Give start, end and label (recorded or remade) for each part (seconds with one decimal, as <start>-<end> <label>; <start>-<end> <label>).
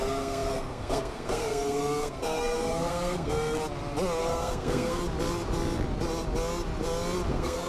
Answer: 0.0-3.6 remade; 3.6-4.2 recorded; 4.2-5.0 remade; 5.0-7.3 recorded; 7.3-7.7 remade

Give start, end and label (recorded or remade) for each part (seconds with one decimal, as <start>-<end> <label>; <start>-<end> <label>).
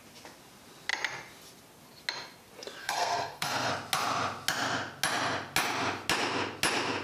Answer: 0.0-2.8 recorded; 2.8-3.7 remade; 3.7-7.0 recorded